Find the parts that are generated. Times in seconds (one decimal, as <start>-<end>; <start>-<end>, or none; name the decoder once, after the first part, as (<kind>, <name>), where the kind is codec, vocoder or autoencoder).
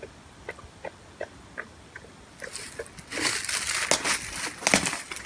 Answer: 0.0-2.5 (vocoder, BigVGAN v2); 4.8-5.3